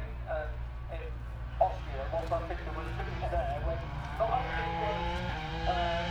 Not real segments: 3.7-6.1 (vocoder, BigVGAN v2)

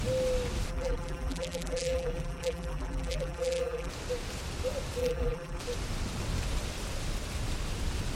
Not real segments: 0.7-3.9 (vocoder, BigVGAN v2); 5.0-5.6

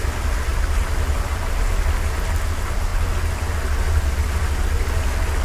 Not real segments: 0.5-1.5 (vocoder, BigVGAN v2)

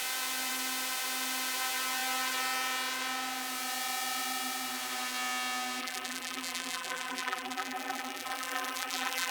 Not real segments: 5.8-9.3 (vocoder, BigVGAN v2)

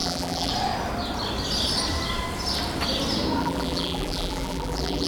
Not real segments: 0.0-0.5 (vocoder, BigVGAN v2); 3.4-5.1